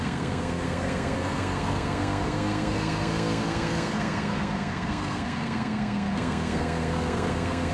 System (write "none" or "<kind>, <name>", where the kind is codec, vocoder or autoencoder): codec, SNAC